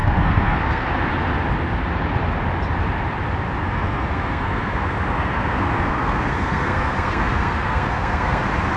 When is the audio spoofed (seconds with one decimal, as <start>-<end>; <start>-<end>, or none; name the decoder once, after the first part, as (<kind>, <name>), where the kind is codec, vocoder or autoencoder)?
0.0-0.9 (codec, SNAC); 3.6-8.4